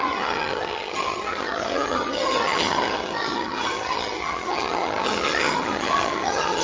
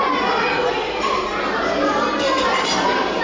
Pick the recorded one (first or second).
second